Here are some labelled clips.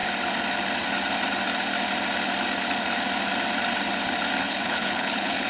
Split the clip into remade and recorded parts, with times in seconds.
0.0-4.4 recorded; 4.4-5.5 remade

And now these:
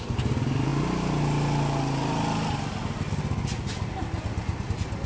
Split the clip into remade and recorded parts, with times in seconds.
0.0-5.1 recorded

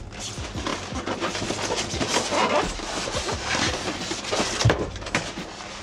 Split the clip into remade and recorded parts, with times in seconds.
0.0-5.8 recorded

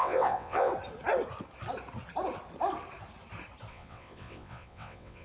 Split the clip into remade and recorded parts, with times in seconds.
0.0-0.7 remade; 0.7-3.7 recorded; 3.7-5.2 remade

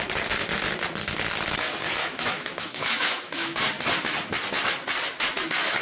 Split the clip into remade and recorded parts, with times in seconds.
0.0-2.0 recorded; 2.0-3.6 remade; 3.6-5.8 recorded

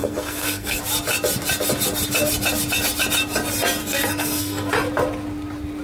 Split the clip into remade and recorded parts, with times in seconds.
0.0-0.8 remade; 0.8-3.8 recorded; 3.8-4.7 remade; 4.7-5.8 recorded